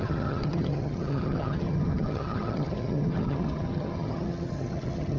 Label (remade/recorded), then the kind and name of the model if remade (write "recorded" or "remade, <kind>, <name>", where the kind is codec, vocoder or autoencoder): remade, vocoder, HiFi-GAN